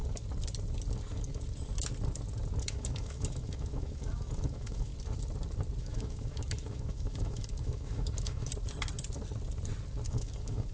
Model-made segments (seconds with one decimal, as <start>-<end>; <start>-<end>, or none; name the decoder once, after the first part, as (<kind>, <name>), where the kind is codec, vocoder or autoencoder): 2.6-4.9 (autoencoder, DAC-VAE); 5.8-8.5; 10.1-10.7